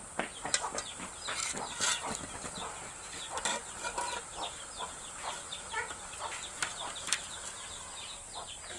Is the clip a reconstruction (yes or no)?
no